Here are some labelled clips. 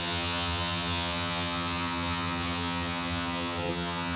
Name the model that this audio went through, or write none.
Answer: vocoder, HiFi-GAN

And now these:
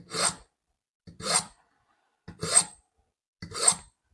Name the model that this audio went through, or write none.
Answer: none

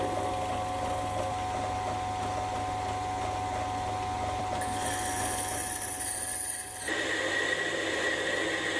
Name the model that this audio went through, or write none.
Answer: none